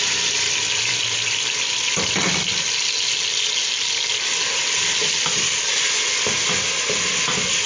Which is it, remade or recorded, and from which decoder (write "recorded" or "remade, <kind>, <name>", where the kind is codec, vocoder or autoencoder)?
recorded